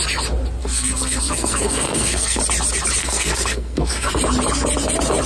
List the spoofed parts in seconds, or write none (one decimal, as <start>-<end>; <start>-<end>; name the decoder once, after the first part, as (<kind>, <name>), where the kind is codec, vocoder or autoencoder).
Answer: 0.6-2.4 (codec, SNAC); 3.0-4.1